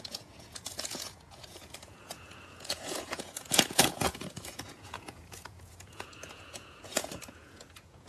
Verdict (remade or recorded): remade